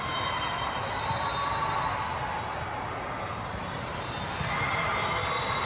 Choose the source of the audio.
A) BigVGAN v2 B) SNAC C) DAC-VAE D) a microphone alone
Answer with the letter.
D